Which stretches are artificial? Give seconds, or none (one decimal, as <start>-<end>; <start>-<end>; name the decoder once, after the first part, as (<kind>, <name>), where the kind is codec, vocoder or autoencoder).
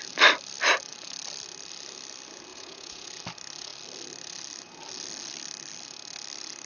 2.5-3.1 (vocoder, Vocos)